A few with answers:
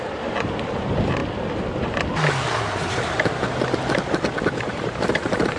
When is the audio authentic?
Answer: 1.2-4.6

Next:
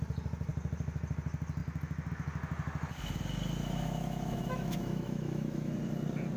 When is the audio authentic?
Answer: 0.0-3.6; 5.7-6.4

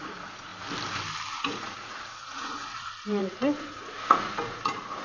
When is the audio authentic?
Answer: 0.5-1.3